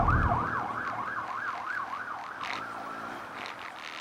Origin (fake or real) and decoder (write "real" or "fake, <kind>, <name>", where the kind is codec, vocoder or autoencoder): real